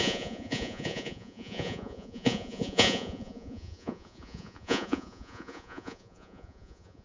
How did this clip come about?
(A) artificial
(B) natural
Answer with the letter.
A